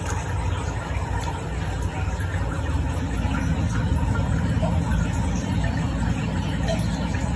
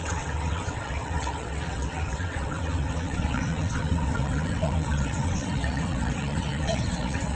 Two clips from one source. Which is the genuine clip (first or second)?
first